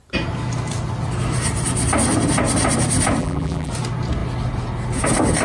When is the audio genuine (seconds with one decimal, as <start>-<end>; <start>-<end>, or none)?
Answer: 0.0-3.2; 3.7-5.4